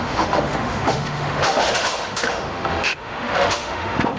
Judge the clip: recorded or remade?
remade